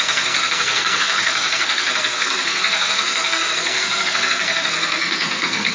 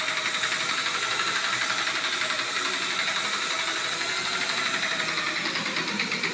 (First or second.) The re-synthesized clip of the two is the first